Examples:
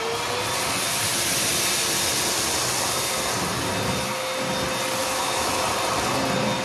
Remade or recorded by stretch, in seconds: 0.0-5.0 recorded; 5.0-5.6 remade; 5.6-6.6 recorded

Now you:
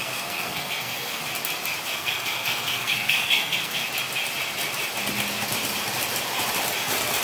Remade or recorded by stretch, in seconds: 0.0-1.2 remade; 1.2-1.9 recorded; 1.9-3.9 remade; 3.9-7.2 recorded